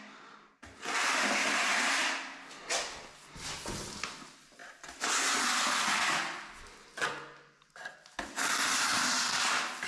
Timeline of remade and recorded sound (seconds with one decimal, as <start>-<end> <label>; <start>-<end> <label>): 0.0-9.9 recorded